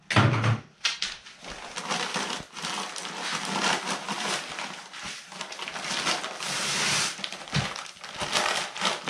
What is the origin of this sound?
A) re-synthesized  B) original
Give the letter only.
B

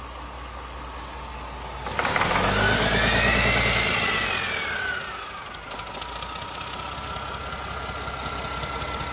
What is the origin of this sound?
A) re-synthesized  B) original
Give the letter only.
B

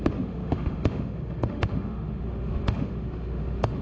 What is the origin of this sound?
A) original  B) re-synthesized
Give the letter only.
B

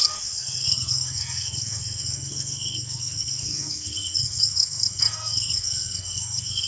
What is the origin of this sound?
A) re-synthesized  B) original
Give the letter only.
A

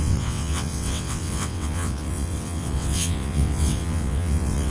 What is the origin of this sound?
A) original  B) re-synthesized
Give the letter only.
B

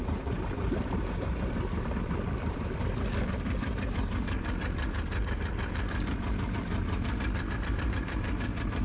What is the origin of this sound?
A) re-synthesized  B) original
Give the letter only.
A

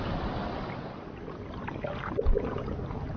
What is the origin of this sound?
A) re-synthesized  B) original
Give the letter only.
B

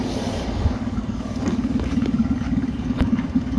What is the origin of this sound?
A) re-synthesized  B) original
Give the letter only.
A